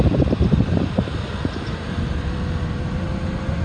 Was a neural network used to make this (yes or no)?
no